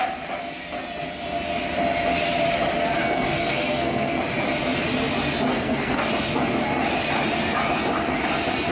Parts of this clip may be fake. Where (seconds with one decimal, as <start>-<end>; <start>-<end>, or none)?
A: 3.0-4.2; 5.5-6.0